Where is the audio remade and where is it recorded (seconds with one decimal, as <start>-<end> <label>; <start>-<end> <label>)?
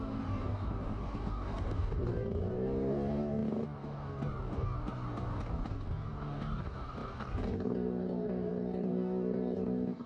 0.0-10.1 remade